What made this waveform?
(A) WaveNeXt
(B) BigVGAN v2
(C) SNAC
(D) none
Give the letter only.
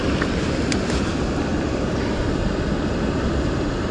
B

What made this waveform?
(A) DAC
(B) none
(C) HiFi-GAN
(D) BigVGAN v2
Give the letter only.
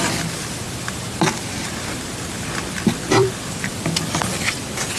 D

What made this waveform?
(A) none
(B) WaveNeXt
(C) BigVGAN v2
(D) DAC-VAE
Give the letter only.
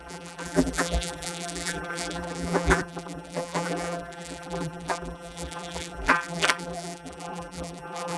C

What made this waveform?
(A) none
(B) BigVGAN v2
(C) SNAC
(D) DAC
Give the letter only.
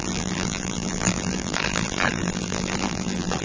B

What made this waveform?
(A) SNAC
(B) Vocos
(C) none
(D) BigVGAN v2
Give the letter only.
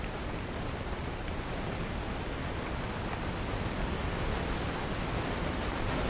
C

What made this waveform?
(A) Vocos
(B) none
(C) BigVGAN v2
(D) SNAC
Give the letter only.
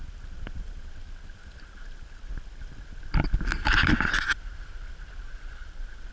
B